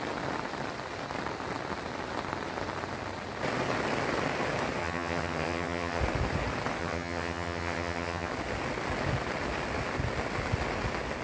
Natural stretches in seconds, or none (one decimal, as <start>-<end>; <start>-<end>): 0.0-4.8; 6.0-6.8; 8.3-11.2